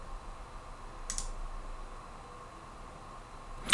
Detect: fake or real real